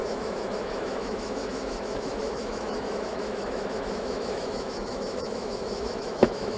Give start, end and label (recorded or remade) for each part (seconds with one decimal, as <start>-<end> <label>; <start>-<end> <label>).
0.0-6.6 remade